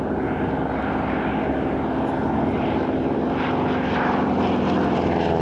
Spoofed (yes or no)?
no